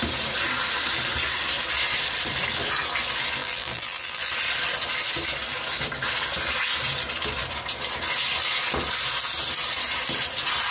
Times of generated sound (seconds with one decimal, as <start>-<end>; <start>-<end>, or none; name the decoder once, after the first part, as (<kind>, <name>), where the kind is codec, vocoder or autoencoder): 3.4-4.3 (vocoder, BigVGAN v2)